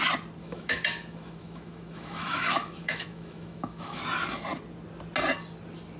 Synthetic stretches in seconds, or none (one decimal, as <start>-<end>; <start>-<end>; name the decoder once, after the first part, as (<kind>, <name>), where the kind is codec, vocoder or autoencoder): 0.4-4.0 (autoencoder, DAC-VAE)